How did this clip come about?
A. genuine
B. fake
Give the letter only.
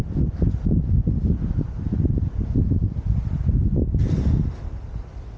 A